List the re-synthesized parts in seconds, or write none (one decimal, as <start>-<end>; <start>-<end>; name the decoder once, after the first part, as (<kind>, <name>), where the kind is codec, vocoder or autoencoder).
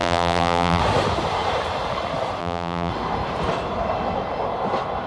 0.0-0.8 (vocoder, BigVGAN v2); 2.4-2.9